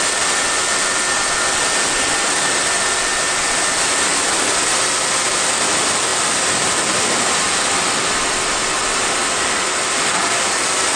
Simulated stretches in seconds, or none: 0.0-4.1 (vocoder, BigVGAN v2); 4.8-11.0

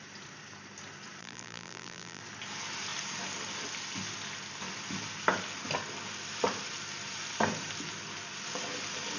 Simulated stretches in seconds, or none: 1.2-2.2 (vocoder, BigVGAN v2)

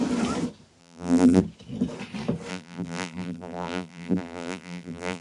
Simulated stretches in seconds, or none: 0.8-1.4 (vocoder, BigVGAN v2); 2.5-5.2